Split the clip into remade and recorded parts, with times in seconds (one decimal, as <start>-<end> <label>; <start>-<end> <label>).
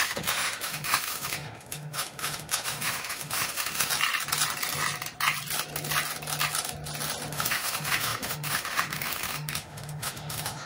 0.0-3.9 remade; 3.9-7.3 recorded; 7.3-10.7 remade